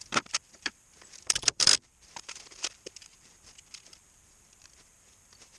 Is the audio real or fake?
fake